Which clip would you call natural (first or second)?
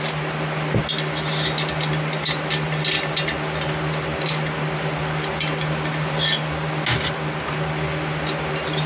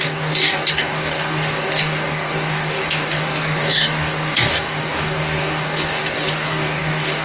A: first